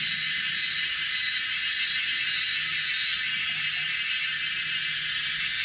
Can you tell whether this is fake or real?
real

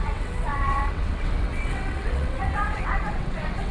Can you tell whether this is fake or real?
fake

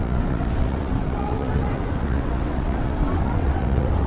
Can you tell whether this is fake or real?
fake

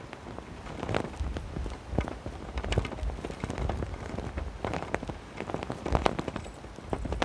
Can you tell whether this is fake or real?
real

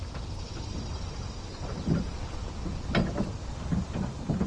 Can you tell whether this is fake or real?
real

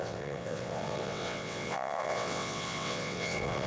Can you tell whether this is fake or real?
fake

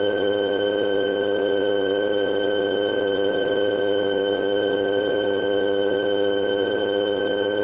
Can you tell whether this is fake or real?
fake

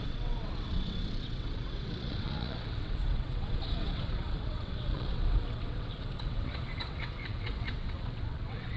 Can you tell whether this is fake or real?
fake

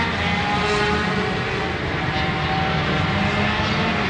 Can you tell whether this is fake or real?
real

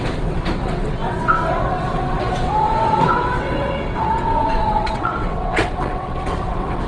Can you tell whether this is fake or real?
fake